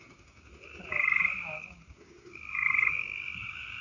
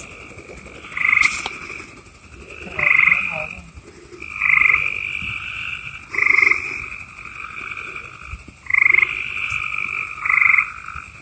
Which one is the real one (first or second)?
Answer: second